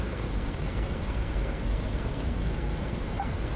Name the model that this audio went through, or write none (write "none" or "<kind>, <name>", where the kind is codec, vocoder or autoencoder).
codec, SNAC